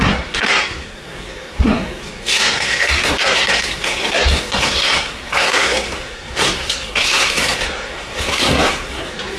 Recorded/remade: remade